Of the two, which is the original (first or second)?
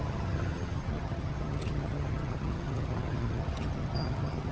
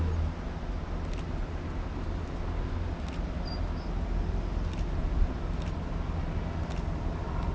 second